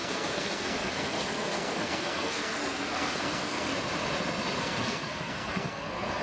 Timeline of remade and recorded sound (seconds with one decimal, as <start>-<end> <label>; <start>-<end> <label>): 0.0-3.7 remade; 3.7-4.6 recorded; 4.6-6.2 remade